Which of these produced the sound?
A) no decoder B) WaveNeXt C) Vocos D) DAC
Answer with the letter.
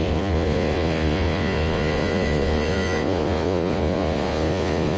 C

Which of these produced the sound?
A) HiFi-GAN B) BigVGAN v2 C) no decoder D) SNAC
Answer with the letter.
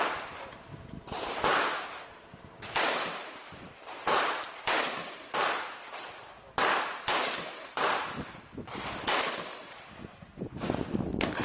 B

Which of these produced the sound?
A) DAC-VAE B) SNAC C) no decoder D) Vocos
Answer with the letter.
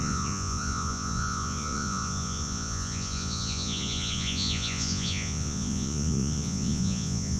D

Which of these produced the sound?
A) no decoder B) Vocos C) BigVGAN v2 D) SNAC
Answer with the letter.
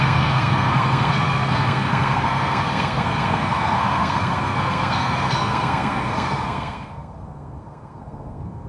D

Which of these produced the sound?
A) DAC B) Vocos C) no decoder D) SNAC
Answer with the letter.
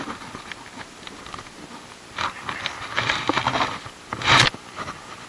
C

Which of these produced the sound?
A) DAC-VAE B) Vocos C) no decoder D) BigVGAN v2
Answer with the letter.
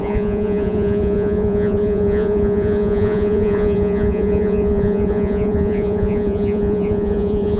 B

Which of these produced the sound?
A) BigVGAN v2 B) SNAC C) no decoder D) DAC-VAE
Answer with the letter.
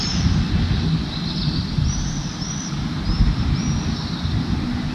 C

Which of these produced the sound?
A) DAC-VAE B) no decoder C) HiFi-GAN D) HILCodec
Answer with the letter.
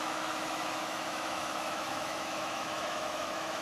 A